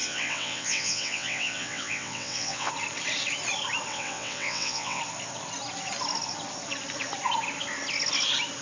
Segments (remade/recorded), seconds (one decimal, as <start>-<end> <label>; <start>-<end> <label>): 0.0-2.7 remade; 2.7-3.9 recorded; 3.9-5.0 remade; 5.0-8.6 recorded

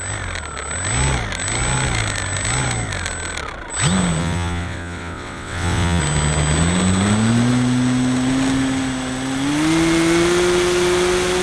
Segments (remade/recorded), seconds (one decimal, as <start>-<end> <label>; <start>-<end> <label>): 0.0-4.2 recorded; 4.2-6.0 remade; 6.0-11.4 recorded

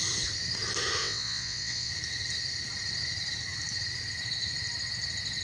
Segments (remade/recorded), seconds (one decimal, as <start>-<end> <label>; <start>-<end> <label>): 0.0-1.0 recorded; 1.0-1.9 remade; 1.9-5.4 recorded

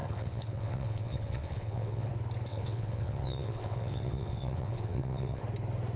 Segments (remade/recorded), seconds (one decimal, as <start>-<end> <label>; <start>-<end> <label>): 0.0-2.1 remade; 2.1-2.5 recorded; 2.5-5.4 remade; 5.4-6.0 recorded

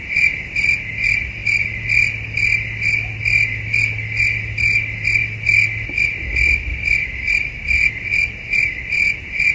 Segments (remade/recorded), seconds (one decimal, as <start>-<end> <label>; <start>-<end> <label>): 0.0-9.5 recorded

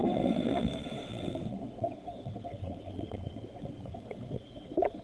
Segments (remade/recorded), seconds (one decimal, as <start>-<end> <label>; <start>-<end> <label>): 0.0-5.0 remade

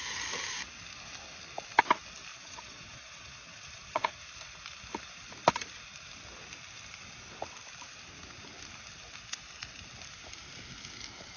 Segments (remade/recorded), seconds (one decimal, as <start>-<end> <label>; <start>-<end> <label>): 0.0-2.3 recorded; 2.3-4.2 remade; 4.2-11.4 recorded